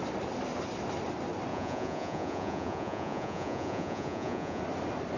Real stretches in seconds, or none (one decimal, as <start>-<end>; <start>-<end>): 0.0-1.5; 4.6-5.2

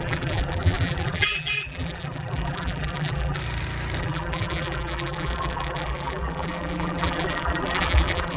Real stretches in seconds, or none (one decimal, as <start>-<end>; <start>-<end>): 3.4-4.0